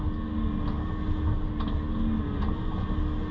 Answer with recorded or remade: recorded